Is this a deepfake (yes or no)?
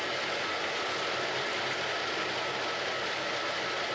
no